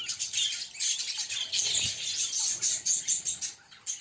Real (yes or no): yes